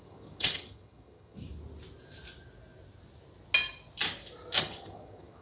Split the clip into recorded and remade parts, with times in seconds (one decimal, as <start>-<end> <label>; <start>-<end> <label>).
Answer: 0.0-1.4 remade; 1.4-4.6 recorded; 4.6-5.4 remade